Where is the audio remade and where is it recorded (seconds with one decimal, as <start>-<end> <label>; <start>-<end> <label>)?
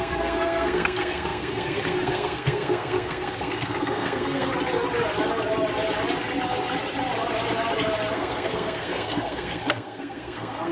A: 0.0-4.5 remade; 4.5-8.1 recorded; 8.1-10.7 remade